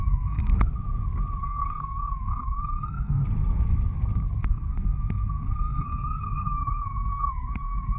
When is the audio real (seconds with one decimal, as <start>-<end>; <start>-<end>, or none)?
0.5-1.4; 3.2-4.4